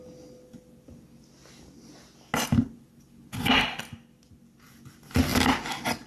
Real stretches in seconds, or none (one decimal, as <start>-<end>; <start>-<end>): 0.0-5.3